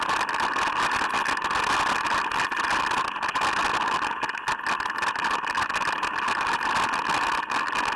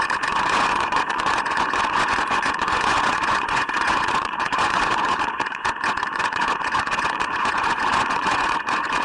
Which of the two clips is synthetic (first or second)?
second